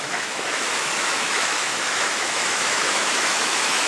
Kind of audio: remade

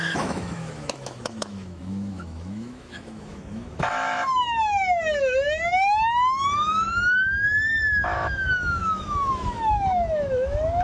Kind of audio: remade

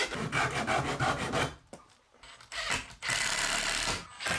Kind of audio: recorded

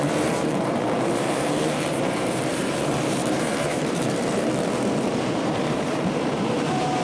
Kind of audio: remade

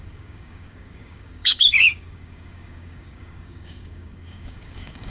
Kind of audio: remade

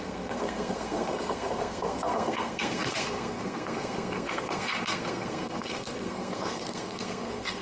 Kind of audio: remade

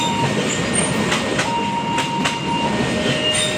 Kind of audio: recorded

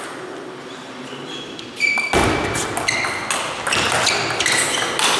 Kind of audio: recorded